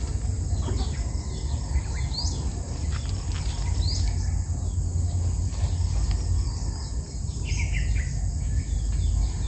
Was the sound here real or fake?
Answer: real